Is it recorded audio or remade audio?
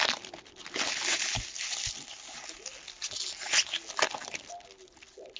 recorded